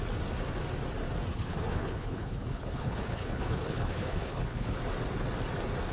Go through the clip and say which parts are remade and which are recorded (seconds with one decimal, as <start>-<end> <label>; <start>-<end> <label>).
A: 0.0-1.3 recorded; 1.3-4.8 remade; 4.8-5.9 recorded